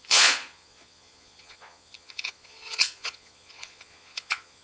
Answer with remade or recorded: remade